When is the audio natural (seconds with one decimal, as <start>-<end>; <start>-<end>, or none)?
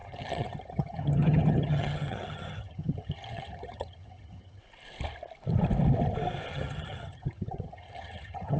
4.6-6.5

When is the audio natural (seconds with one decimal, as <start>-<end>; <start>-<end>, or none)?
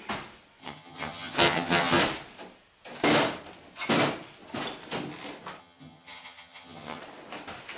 0.0-0.6; 2.0-5.6; 7.0-7.8